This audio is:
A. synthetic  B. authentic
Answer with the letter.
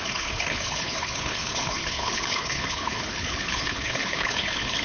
A